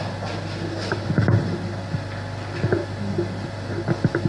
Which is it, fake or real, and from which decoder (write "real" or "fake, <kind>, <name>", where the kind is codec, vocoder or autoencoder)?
real